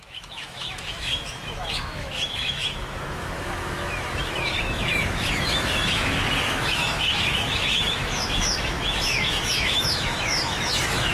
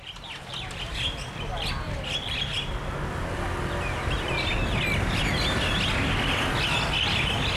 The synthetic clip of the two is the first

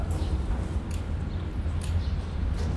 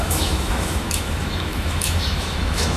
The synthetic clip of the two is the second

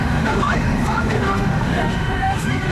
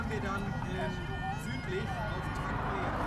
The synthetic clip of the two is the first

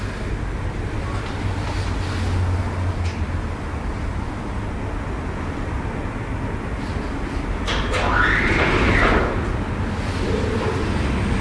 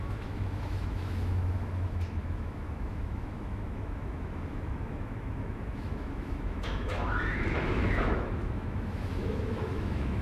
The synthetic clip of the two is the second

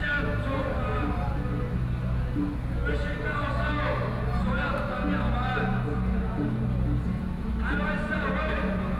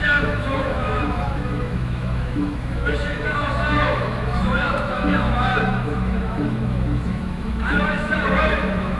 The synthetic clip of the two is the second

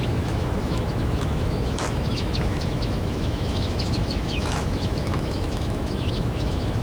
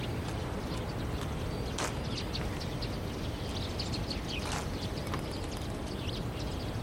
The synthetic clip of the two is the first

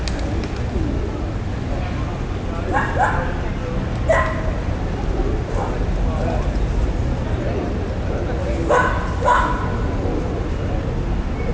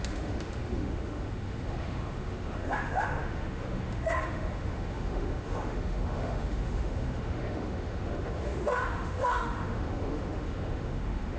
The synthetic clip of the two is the second